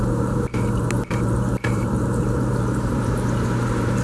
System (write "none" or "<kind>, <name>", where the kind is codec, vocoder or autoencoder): vocoder, BigVGAN v2